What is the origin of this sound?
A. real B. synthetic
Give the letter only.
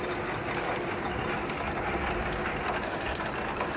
A